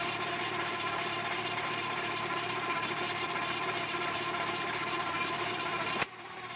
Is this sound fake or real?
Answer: fake